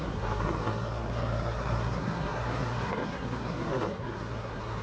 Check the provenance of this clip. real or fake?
fake